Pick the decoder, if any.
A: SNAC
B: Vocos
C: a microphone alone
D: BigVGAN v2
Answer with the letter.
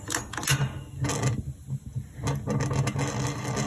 C